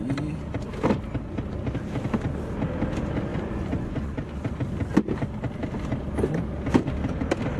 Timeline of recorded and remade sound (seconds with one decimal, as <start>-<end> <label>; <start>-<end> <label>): 0.0-3.3 recorded; 3.3-4.3 remade; 4.3-7.6 recorded